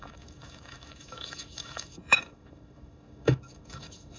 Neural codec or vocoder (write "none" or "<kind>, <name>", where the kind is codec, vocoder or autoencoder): autoencoder, DAC-VAE